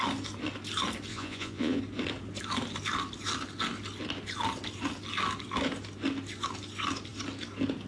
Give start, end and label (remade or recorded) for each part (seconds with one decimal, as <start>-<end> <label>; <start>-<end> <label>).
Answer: 0.0-1.1 recorded; 1.1-1.8 remade; 1.8-7.9 recorded